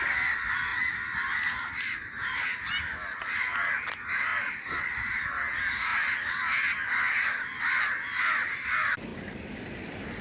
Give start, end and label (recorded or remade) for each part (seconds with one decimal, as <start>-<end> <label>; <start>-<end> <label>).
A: 0.0-9.1 remade; 9.1-10.2 recorded

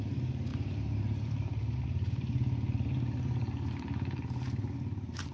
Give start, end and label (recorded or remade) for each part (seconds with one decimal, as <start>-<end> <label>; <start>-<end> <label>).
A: 0.0-5.3 remade

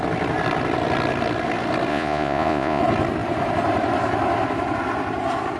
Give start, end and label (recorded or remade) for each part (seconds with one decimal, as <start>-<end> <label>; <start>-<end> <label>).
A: 0.0-1.9 recorded; 1.9-2.8 remade; 2.8-5.6 recorded

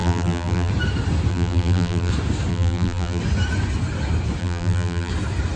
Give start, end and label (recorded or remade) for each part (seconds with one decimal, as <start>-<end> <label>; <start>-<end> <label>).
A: 0.0-0.7 remade; 0.7-1.3 recorded; 1.3-2.1 remade; 2.1-2.5 recorded; 2.5-3.2 remade; 3.2-4.4 recorded; 4.4-5.1 remade; 5.1-5.6 recorded

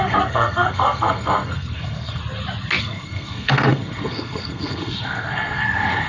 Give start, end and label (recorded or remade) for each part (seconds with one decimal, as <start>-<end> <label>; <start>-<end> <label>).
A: 0.0-2.2 remade; 2.2-2.8 recorded; 2.8-6.1 remade

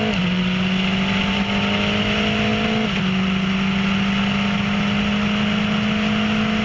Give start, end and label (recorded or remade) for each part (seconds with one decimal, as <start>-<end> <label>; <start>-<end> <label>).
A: 0.0-6.6 recorded